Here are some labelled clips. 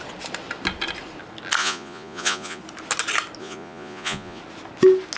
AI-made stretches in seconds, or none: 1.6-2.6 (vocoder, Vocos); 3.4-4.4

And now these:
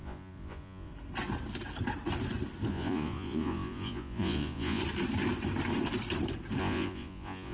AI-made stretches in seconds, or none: 0.0-0.9 (vocoder, Vocos); 2.7-4.8; 6.6-7.5